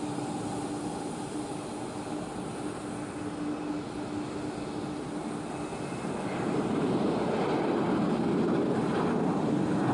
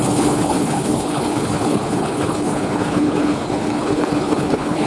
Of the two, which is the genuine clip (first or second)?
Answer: first